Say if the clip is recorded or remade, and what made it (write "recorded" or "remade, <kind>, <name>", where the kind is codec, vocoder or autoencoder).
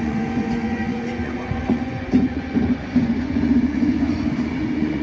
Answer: remade, vocoder, Vocos